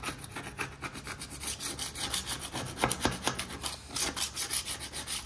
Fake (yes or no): no